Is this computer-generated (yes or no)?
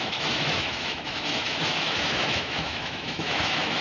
yes